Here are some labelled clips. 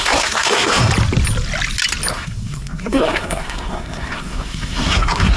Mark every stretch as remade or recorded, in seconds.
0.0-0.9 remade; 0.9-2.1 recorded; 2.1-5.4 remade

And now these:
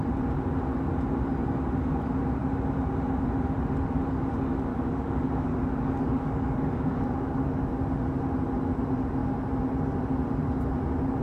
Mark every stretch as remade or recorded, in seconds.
0.0-4.7 recorded; 4.7-7.7 remade; 7.7-11.2 recorded

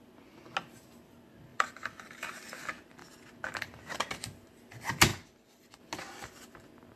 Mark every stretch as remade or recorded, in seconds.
0.0-1.5 recorded; 1.5-2.6 remade; 2.6-5.1 recorded; 5.1-5.8 remade; 5.8-7.0 recorded

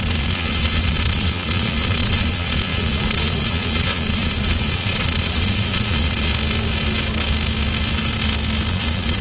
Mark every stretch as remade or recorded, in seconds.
0.0-6.3 remade; 6.3-8.7 recorded; 8.7-9.2 remade